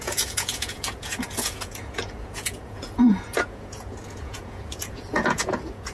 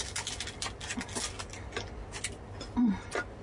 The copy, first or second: first